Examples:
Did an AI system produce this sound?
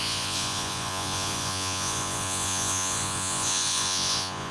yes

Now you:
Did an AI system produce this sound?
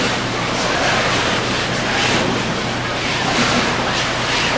no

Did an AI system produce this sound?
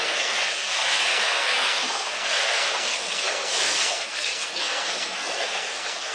yes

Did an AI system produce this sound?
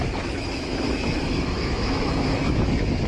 yes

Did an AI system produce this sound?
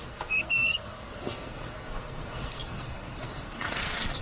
yes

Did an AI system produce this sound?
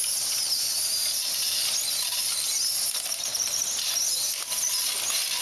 no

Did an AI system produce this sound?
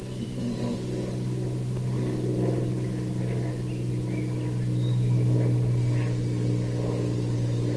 no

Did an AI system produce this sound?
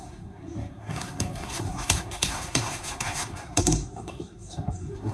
yes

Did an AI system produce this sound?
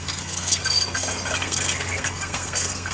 yes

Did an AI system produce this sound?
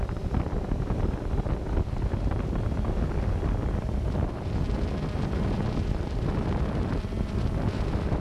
yes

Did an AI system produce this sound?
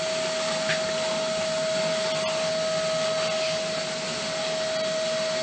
no